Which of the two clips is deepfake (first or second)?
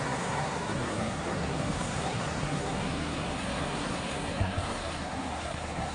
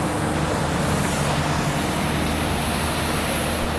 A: first